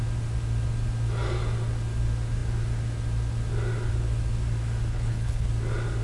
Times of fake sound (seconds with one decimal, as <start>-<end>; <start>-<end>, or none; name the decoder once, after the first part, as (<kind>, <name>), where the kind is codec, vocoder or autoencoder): 4.9-5.5 (codec, HILCodec)